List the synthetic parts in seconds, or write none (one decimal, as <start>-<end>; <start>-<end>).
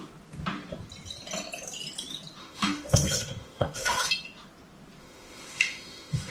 2.4-4.1; 5.0-6.3